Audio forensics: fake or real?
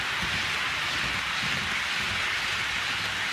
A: real